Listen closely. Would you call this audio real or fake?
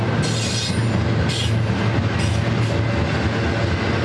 real